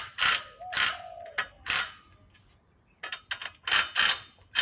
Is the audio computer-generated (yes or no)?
no